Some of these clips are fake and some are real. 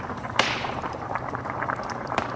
fake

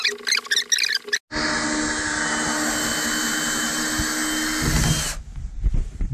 real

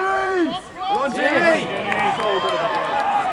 fake